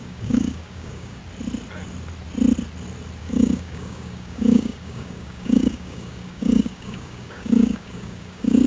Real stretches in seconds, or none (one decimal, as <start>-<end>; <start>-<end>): 1.2-3.2